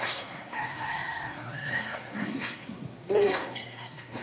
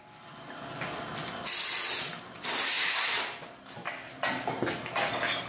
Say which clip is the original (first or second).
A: second